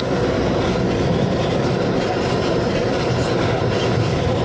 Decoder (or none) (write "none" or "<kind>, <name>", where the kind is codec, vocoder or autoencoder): none